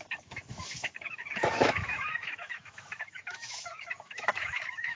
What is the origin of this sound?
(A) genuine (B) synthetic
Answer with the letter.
B